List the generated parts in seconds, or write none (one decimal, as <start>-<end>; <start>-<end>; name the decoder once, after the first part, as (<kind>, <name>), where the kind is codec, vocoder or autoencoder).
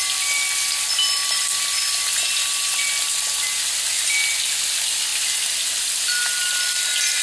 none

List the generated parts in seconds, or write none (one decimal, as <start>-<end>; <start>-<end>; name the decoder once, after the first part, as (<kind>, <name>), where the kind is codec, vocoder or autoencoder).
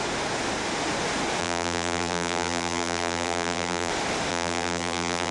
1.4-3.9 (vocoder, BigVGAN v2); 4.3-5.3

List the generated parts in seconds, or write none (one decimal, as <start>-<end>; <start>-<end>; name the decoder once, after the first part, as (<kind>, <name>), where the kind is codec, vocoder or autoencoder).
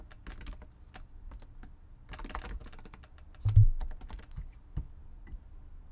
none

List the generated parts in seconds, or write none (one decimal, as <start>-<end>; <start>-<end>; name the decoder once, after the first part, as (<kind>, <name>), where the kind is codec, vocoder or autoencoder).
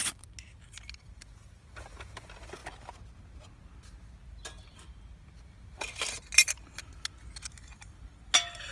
none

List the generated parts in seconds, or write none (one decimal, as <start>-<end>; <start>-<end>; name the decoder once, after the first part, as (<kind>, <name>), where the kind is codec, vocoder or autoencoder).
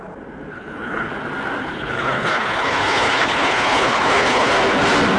0.5-1.1 (codec, HILCodec); 1.6-4.5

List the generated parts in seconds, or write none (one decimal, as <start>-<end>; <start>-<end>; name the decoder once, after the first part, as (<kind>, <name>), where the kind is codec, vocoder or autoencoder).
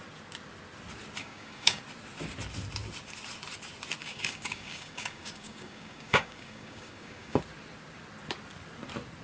1.2-1.8 (codec, DAC); 4.0-7.4